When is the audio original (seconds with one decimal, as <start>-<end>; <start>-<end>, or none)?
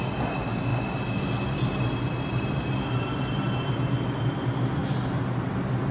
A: 0.0-5.9